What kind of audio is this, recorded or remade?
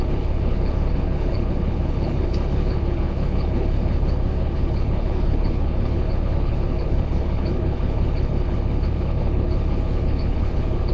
remade